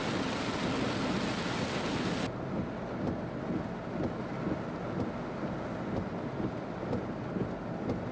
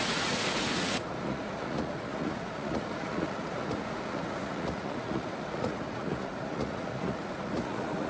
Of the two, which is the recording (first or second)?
first